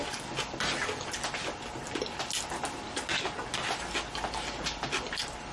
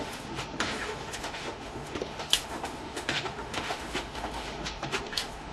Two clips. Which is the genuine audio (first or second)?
first